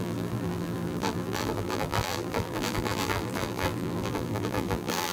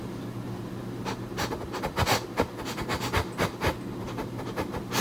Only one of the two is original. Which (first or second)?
second